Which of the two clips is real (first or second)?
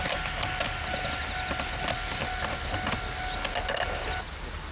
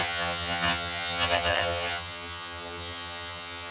first